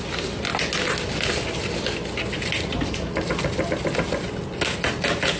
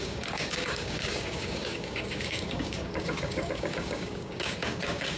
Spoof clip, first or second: second